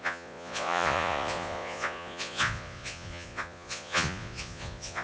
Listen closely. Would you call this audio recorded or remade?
remade